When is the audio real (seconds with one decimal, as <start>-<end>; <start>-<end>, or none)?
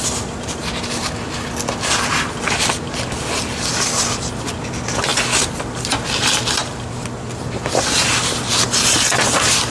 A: 0.0-9.7